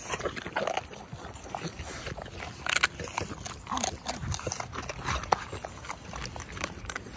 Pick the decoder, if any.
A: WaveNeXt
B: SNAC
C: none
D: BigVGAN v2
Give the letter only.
C